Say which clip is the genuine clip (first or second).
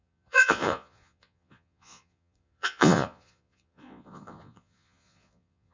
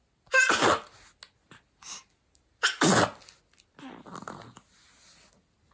second